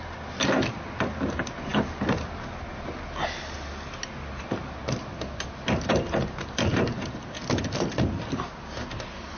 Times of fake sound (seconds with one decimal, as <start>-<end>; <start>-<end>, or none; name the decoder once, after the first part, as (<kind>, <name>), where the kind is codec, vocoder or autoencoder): none